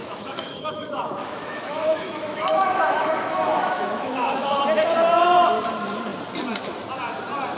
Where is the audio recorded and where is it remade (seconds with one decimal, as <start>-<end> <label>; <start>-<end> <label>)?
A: 0.0-4.6 remade; 4.6-7.6 recorded